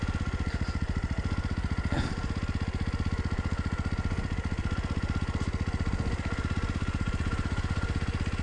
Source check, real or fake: real